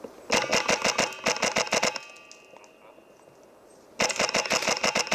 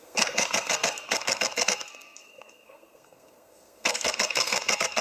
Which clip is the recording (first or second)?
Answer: first